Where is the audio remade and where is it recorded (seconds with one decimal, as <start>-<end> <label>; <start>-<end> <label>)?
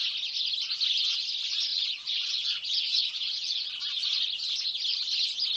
0.0-1.7 recorded; 1.7-3.7 remade; 3.7-5.6 recorded